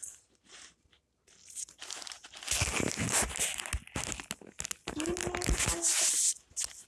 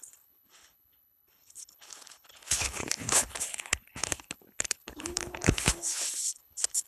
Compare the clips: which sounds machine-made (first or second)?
second